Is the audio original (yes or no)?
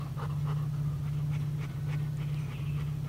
yes